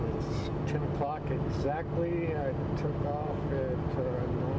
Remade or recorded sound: recorded